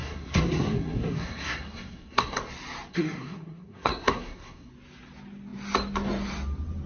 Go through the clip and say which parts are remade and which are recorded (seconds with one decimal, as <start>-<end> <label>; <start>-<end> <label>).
0.0-2.4 remade; 2.4-2.9 recorded; 2.9-4.7 remade; 4.7-6.9 recorded

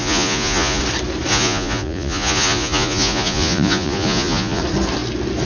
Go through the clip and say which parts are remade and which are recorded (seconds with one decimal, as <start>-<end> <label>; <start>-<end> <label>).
0.0-0.8 remade; 0.8-1.3 recorded; 1.3-4.6 remade; 4.6-5.5 recorded

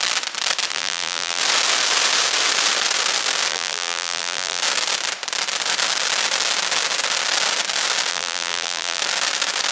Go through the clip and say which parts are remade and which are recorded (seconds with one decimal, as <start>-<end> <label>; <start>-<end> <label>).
0.0-0.7 recorded; 0.7-1.4 remade; 1.4-3.5 recorded; 3.5-4.6 remade; 4.6-8.1 recorded; 8.1-9.0 remade; 9.0-9.7 recorded

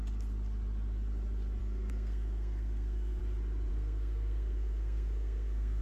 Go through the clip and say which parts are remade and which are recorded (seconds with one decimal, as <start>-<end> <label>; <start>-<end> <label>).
0.0-1.6 recorded; 1.6-3.2 remade; 3.2-3.7 recorded; 3.7-5.8 remade

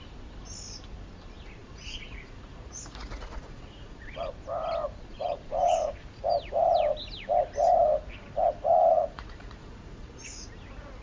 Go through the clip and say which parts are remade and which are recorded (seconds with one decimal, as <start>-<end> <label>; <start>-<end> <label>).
0.0-1.6 recorded; 1.6-4.3 remade; 4.3-5.1 recorded; 5.1-6.2 remade; 6.2-8.7 recorded; 8.7-10.5 remade; 10.5-11.0 recorded